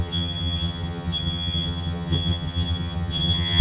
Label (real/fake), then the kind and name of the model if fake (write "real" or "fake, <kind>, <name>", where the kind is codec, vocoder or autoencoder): fake, vocoder, HiFi-GAN